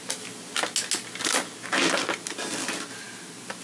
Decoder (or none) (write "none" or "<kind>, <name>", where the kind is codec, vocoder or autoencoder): none